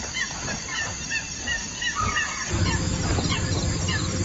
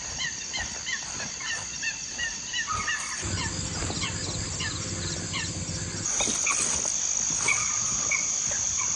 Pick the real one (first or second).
first